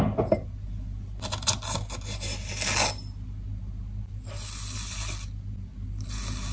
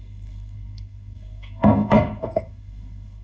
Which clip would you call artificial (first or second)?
second